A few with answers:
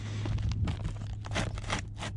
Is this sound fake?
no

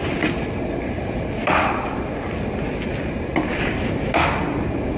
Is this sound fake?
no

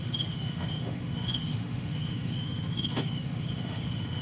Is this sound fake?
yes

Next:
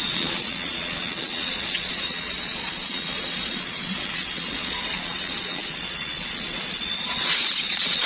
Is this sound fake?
yes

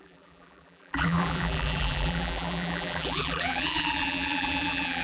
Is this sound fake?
yes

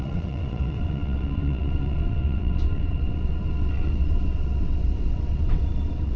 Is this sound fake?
yes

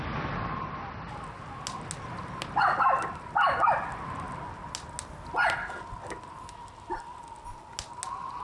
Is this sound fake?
no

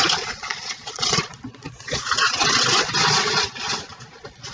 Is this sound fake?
yes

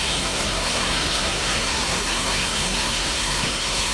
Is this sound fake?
yes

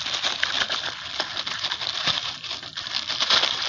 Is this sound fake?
no